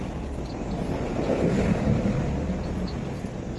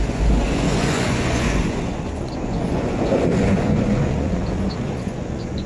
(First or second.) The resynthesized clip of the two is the second